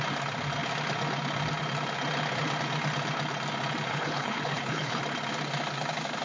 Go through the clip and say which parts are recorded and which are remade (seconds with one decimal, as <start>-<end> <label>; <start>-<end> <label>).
0.0-3.9 recorded; 3.9-5.0 remade; 5.0-6.2 recorded